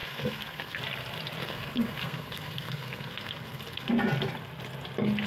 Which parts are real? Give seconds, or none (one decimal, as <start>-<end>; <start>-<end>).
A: 0.8-1.4; 3.9-5.3